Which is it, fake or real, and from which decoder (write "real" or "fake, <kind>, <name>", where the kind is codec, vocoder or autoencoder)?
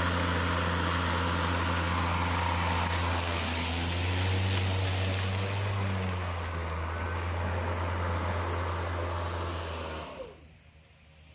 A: real